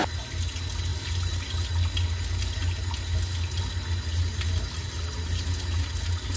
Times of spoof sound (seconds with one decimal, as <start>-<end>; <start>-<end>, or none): 0.9-1.5